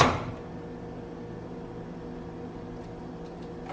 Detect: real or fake real